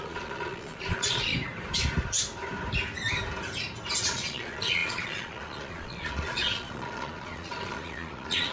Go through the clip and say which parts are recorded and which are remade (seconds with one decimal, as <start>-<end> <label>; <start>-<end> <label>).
0.0-1.3 remade; 1.3-4.0 recorded; 4.0-8.5 remade